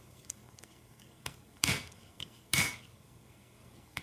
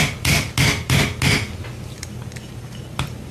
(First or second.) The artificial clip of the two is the first